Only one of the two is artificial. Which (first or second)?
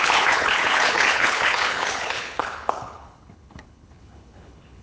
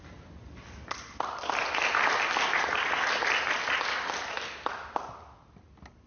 first